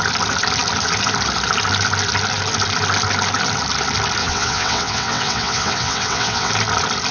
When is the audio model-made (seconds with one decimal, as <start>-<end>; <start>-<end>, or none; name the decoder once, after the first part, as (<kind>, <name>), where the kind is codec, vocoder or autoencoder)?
4.2-6.5 (vocoder, WaveNeXt)